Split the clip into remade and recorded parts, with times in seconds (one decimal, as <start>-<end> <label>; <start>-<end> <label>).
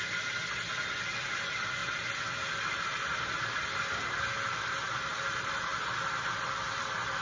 0.0-7.2 recorded